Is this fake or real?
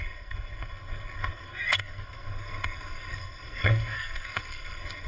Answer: fake